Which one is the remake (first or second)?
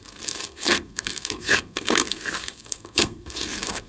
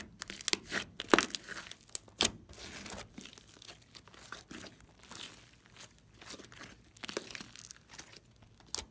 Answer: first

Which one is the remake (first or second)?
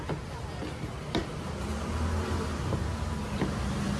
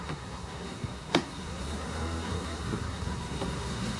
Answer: second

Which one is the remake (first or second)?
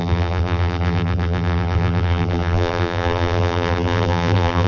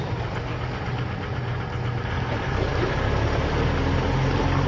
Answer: first